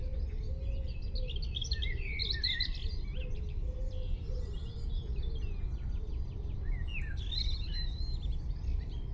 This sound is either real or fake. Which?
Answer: real